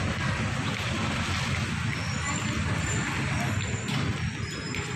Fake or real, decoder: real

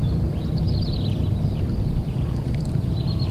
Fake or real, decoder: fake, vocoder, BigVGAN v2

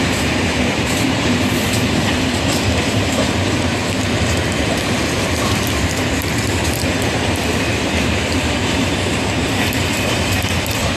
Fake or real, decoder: fake, vocoder, BigVGAN v2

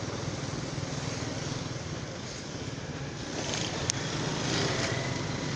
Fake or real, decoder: real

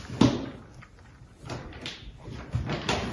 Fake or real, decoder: real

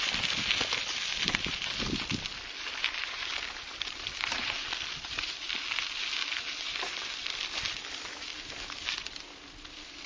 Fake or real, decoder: fake, vocoder, BigVGAN v2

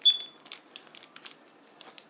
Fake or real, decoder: real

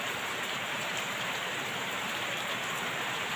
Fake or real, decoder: fake, vocoder, BigVGAN v2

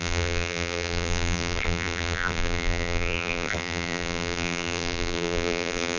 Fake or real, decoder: fake, vocoder, BigVGAN v2